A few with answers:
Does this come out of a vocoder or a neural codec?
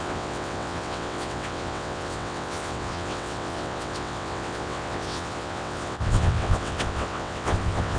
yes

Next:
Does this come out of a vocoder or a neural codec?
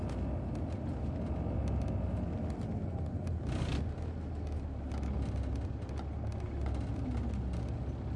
no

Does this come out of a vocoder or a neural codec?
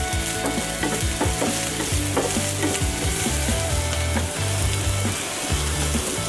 no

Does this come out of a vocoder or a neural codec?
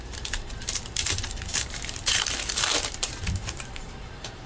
yes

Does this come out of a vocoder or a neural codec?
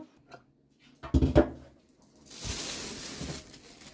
no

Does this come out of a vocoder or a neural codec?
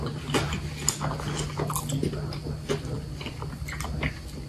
no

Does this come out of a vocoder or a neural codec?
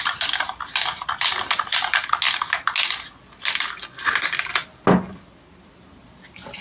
no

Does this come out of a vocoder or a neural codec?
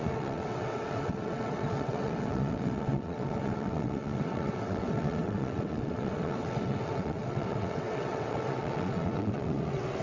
yes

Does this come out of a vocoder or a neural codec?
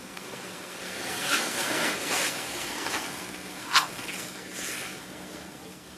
yes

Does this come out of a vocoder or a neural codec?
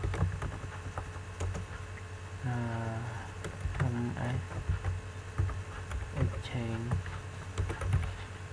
no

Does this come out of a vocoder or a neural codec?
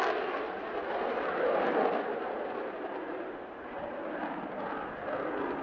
no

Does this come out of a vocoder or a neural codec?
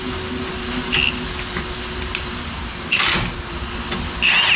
no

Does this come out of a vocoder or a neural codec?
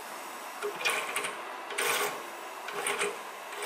no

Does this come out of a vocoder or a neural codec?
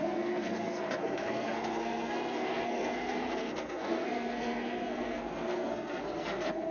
yes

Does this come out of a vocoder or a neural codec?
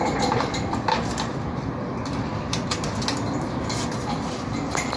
no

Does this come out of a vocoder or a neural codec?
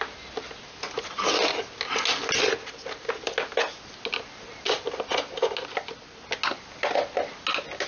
no